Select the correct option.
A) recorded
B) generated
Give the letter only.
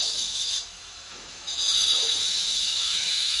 B